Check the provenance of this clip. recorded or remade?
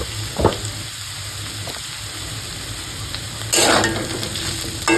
recorded